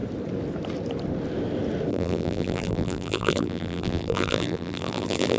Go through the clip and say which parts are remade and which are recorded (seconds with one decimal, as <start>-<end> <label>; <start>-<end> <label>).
0.0-1.9 recorded; 1.9-5.4 remade